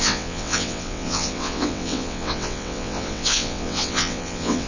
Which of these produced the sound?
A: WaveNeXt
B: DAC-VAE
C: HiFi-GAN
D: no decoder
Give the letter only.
A